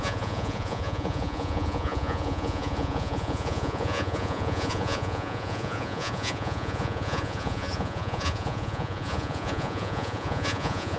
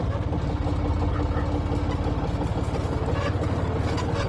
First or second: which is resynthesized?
first